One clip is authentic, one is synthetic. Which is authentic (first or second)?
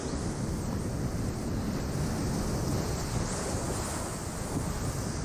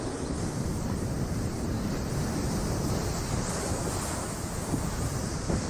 first